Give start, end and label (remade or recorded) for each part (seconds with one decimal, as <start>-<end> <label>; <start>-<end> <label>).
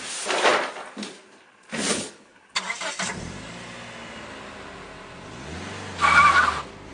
0.0-1.9 recorded; 1.9-2.4 remade; 2.4-6.9 recorded